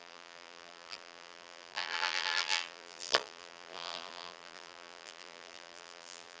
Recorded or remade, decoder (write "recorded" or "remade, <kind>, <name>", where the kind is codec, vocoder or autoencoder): remade, vocoder, BigVGAN v2